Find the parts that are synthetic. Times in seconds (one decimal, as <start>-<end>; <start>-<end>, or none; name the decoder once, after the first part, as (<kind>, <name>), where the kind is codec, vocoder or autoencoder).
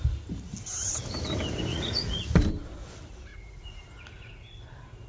1.7-2.2 (vocoder, Vocos); 3.3-4.6